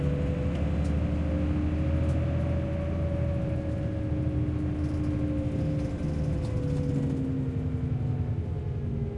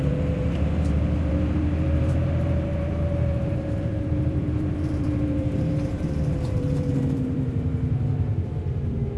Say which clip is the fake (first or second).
second